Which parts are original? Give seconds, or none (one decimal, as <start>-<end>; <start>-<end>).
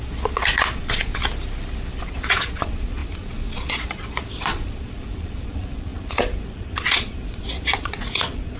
1.2-1.9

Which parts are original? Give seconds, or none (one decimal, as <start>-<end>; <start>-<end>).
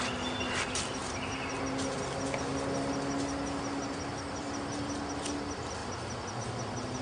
0.0-7.0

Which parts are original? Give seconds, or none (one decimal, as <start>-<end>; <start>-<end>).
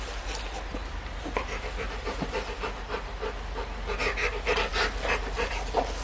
0.0-6.0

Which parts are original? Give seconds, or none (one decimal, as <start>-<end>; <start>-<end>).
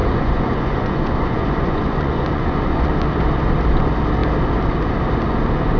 2.9-5.8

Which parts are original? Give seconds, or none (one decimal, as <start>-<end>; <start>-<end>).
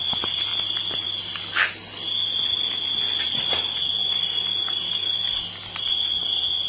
0.5-3.2; 4.0-5.9